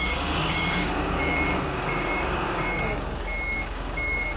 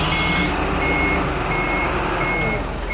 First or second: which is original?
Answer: second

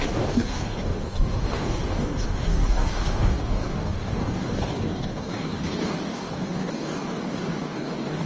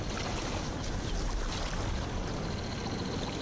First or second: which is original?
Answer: second